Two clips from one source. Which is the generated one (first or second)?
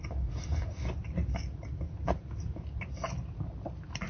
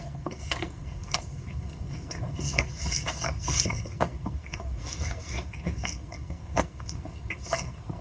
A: second